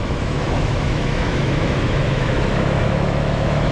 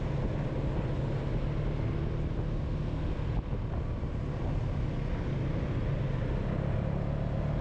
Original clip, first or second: second